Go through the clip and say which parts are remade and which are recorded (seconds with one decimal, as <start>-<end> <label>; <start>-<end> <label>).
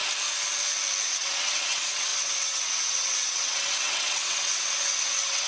0.0-1.0 recorded; 1.0-5.5 remade